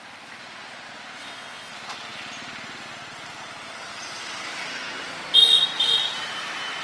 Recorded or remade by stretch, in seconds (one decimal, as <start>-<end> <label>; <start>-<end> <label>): 0.0-1.2 recorded; 1.2-1.7 remade; 1.7-6.8 recorded